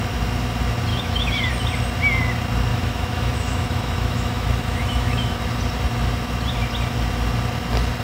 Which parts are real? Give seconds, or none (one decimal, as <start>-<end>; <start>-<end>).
0.0-0.9; 1.5-2.7; 5.4-8.0